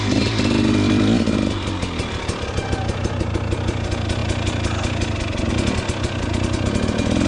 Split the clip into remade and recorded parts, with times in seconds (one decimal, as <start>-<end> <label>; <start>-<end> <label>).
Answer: 0.0-7.3 recorded